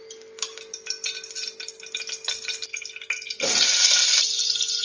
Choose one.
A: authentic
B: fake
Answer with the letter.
A